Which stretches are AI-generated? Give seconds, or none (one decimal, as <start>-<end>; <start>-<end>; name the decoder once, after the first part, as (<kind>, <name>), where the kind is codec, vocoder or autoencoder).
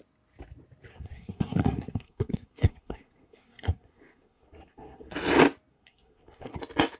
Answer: 0.9-5.1 (codec, SNAC); 5.7-6.6